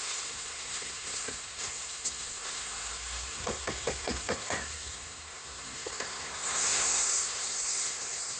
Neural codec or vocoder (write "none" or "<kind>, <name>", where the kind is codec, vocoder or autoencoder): codec, SNAC